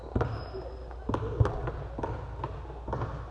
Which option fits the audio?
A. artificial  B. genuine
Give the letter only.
B